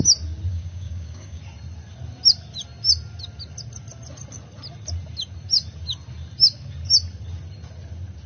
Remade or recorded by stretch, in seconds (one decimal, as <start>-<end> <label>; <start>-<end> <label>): 0.0-0.5 recorded; 0.5-1.4 remade; 1.4-8.3 recorded